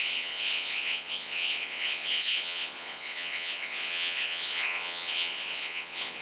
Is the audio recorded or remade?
remade